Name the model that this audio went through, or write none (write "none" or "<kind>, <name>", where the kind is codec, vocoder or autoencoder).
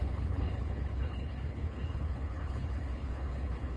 codec, HILCodec